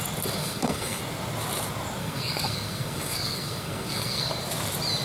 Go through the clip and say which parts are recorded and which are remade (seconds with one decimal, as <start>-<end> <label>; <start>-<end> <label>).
0.0-0.4 recorded; 0.4-1.0 remade; 1.0-2.0 recorded; 2.0-4.3 remade; 4.3-5.0 recorded